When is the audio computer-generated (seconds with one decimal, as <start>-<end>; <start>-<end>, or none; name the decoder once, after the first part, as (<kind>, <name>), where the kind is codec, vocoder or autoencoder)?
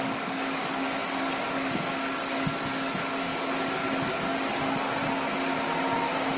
0.0-5.0 (codec, DAC)